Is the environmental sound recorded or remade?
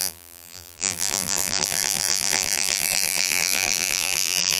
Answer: remade